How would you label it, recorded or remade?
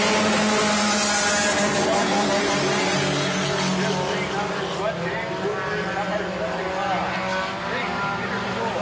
recorded